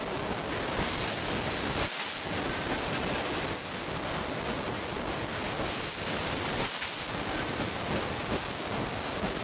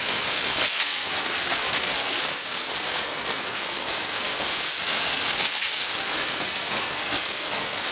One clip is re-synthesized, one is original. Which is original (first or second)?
first